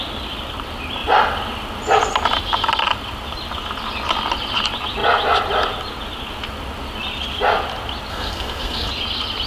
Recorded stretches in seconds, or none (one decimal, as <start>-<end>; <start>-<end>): 0.0-8.1; 8.9-9.5